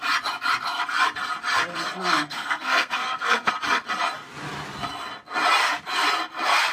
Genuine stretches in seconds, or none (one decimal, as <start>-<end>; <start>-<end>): 0.0-1.7; 3.5-6.7